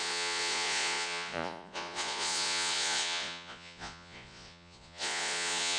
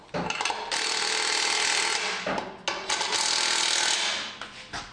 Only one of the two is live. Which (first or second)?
second